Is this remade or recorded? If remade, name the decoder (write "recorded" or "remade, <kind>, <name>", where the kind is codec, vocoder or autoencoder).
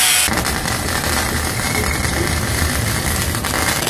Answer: recorded